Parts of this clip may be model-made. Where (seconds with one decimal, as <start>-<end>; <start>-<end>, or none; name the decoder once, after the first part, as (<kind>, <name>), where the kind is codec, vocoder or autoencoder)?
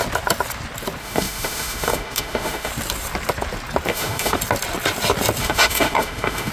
1.0-2.7 (autoencoder, DAC-VAE); 3.9-4.4; 5.4-6.5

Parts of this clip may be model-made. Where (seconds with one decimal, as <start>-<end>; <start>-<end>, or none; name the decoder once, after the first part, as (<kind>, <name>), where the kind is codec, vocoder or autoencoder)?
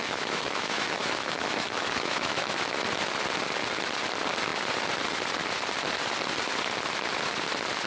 0.0-2.4 (autoencoder, DAC-VAE)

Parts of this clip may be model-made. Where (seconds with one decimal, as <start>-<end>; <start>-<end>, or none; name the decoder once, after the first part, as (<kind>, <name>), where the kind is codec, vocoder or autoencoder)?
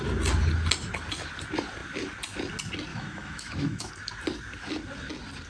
2.9-3.9 (autoencoder, DAC-VAE)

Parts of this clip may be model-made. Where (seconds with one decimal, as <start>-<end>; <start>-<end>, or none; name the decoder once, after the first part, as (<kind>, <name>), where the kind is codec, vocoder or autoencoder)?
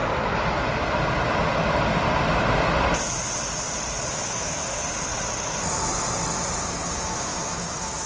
4.1-4.8 (autoencoder, DAC-VAE); 6.6-8.1